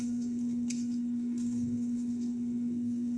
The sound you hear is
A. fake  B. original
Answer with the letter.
A